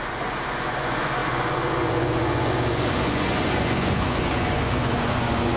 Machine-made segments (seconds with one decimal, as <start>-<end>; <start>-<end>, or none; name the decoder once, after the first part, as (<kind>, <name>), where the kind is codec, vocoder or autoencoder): 0.0-5.6 (vocoder, Vocos)